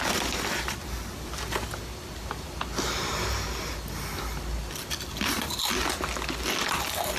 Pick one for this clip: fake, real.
real